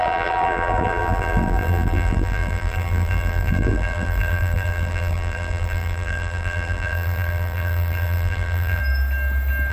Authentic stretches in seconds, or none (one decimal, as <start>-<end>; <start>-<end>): 8.8-9.7